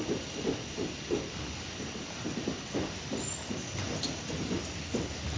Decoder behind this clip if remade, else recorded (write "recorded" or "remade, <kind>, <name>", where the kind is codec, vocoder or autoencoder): recorded